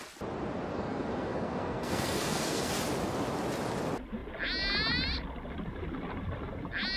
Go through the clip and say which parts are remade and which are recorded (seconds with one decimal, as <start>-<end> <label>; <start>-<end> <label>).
0.0-0.7 recorded; 0.7-2.7 remade; 2.7-7.0 recorded